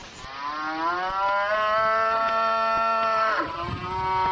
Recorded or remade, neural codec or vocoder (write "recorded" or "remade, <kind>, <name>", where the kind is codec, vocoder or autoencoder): recorded